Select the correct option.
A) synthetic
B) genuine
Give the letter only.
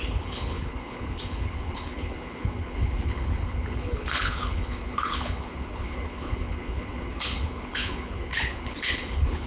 A